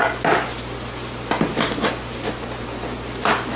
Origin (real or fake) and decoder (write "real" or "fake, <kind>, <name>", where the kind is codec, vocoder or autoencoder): real